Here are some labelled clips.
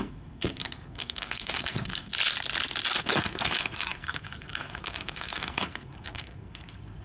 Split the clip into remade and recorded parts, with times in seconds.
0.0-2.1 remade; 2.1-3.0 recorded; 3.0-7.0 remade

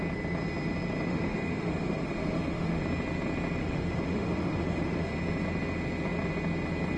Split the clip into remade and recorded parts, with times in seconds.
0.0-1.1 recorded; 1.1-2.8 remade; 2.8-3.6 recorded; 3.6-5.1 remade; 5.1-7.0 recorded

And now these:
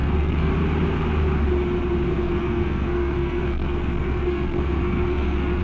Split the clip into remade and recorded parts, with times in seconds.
0.0-0.5 remade; 0.5-2.1 recorded; 2.1-5.6 remade

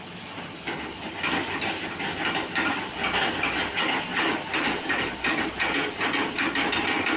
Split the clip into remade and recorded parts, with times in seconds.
0.0-7.2 recorded